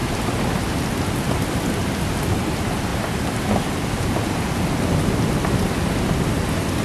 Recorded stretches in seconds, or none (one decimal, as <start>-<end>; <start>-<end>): 0.0-2.9; 4.1-6.8